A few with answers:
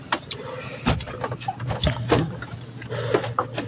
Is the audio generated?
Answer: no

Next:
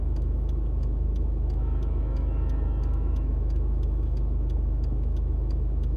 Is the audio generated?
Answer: yes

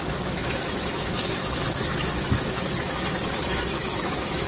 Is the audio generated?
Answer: yes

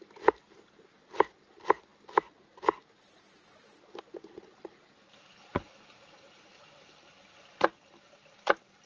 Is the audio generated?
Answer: no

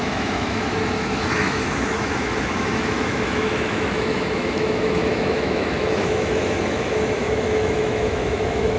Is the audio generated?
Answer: yes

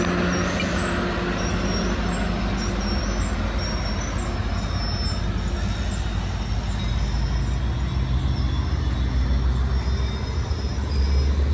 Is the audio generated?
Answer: no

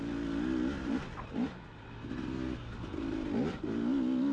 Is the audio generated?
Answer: no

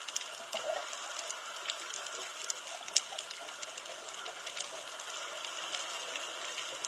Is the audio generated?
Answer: no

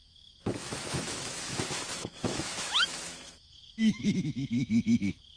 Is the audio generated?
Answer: yes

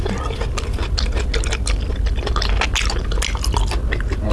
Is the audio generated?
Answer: no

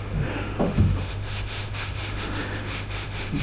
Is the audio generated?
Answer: yes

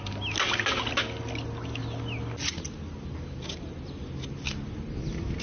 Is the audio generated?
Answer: no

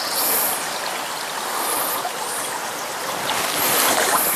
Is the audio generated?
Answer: no